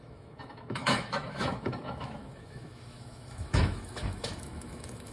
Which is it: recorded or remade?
remade